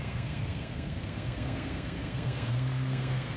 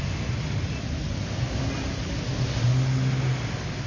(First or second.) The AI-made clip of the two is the first